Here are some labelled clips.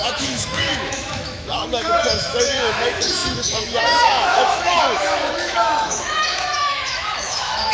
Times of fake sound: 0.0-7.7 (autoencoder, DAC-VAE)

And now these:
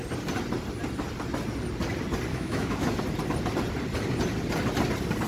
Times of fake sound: 2.3-3.0 (autoencoder, DAC-VAE)

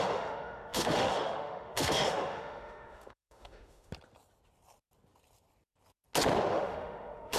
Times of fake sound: 0.0-3.9 (autoencoder, DAC-VAE); 6.5-7.4

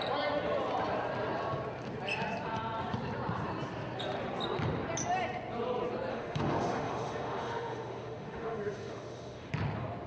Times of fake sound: 6.1-9.5 (autoencoder, DAC-VAE)

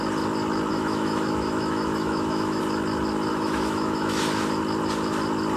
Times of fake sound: 0.7-2.6 (autoencoder, DAC-VAE); 3.3-4.2

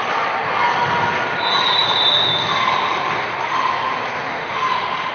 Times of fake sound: 4.3-5.1 (autoencoder, DAC-VAE)

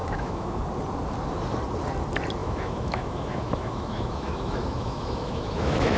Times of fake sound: 0.0-0.6 (autoencoder, DAC-VAE); 2.4-6.0

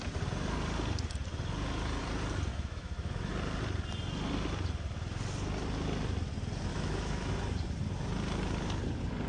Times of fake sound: 2.5-3.3 (autoencoder, DAC-VAE); 6.7-7.3